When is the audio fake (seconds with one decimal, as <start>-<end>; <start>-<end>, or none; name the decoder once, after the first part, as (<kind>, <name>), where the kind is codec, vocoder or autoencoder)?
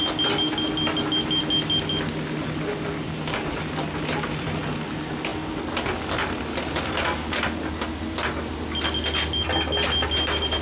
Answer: none